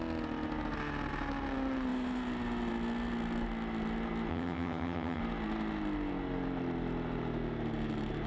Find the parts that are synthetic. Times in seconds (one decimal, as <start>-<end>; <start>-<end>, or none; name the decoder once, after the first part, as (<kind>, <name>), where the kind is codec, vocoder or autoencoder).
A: 4.3-5.2 (vocoder, HiFi-GAN)